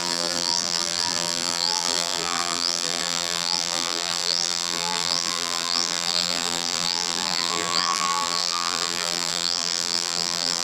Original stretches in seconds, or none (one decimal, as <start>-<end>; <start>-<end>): none